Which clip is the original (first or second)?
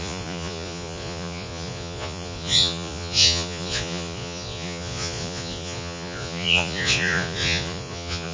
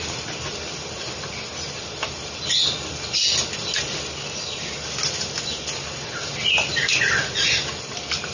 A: second